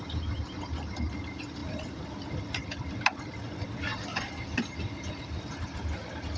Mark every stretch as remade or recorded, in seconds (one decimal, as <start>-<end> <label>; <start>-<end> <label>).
0.0-6.4 recorded